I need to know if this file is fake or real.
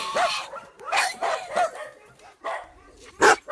fake